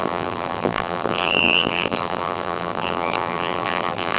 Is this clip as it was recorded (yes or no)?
no